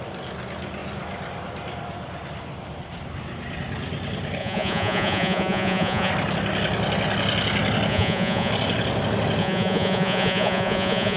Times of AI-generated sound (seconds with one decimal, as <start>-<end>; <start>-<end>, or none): 4.4-6.1; 7.9-8.5; 9.4-11.2